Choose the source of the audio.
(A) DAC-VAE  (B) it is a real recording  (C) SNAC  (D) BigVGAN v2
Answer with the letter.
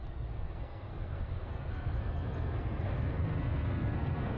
C